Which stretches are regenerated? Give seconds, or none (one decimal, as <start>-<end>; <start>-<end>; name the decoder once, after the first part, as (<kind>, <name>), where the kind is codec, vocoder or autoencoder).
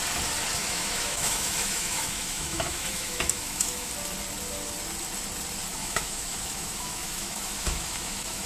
0.6-3.9 (autoencoder, DAC-VAE); 5.7-8.5